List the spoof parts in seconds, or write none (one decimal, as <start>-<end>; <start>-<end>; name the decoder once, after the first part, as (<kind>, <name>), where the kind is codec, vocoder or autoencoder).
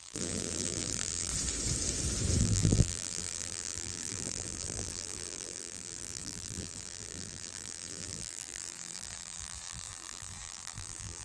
0.0-1.3 (vocoder, BigVGAN v2); 2.4-11.2